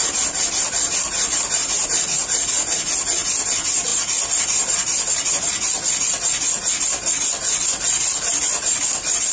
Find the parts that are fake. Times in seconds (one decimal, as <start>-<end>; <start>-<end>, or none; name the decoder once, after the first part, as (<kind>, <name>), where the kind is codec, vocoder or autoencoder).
0.0-2.9 (vocoder, BigVGAN v2); 3.9-5.3; 8.3-9.3